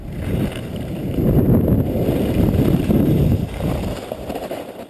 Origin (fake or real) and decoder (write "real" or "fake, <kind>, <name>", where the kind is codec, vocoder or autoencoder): fake, vocoder, BigVGAN v2